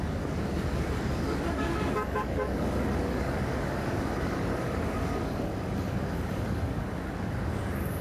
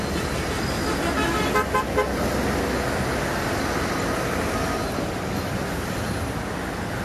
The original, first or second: second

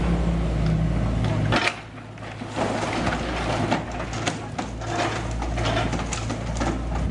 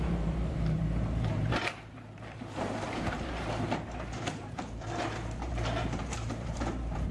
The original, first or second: first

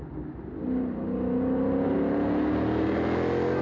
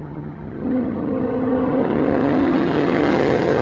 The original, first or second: first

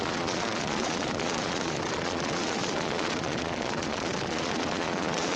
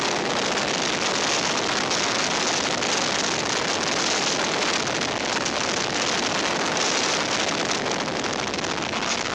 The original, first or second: second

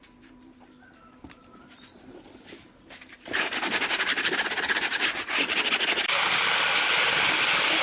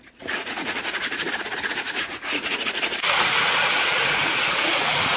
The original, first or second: first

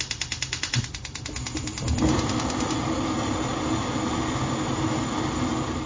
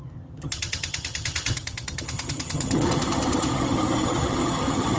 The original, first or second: first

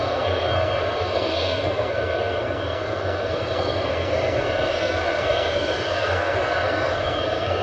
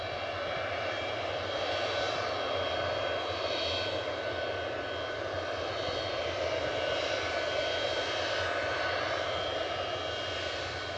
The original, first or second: second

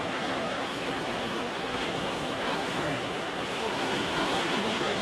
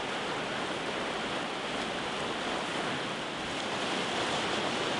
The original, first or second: second